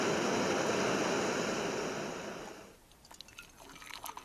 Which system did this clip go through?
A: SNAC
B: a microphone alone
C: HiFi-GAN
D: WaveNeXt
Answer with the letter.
B